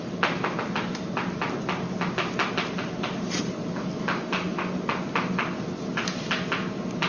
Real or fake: real